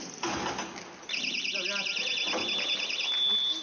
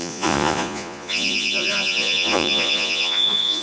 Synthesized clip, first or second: second